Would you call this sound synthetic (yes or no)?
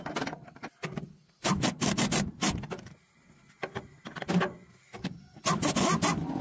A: no